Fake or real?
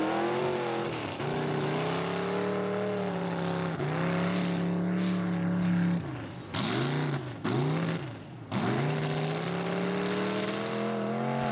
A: real